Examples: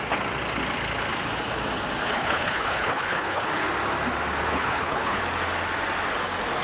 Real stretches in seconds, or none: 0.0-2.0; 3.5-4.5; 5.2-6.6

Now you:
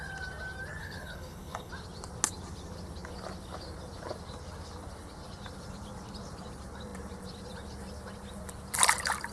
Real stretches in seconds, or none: 0.0-0.8; 1.7-9.3

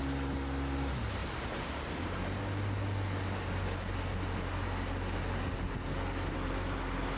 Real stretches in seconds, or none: 0.0-1.2; 2.4-7.2

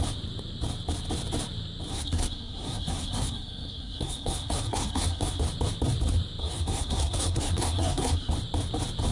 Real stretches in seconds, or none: 0.0-1.9; 5.4-6.4; 8.3-9.1